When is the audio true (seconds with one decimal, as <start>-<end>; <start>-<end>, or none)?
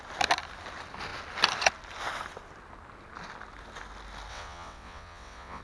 0.0-4.3